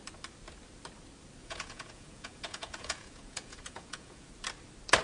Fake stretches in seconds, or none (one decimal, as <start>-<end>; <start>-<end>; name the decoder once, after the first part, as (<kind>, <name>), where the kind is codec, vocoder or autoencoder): 1.4-4.3 (vocoder, Vocos)